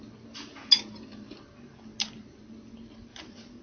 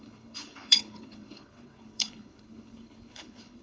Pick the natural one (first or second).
first